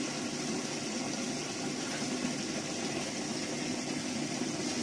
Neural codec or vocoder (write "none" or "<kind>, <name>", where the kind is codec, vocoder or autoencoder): none